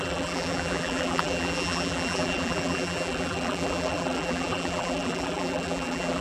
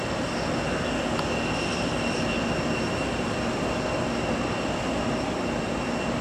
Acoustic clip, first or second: second